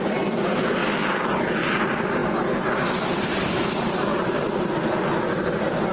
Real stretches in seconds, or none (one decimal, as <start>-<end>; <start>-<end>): 0.8-1.8; 2.2-2.7